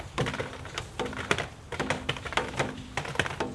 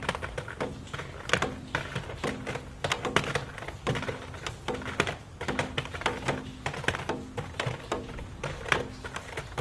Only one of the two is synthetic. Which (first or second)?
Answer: first